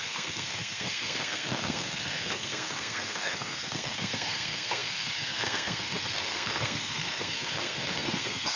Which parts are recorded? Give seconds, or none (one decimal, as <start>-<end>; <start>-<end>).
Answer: none